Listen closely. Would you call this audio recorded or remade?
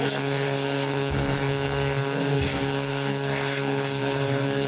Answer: remade